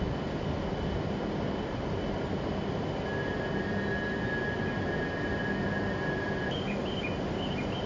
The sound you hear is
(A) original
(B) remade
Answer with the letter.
A